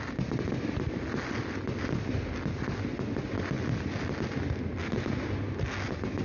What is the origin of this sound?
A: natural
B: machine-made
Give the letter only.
A